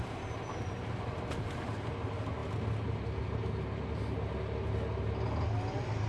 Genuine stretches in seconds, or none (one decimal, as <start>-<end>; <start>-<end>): 0.0-6.1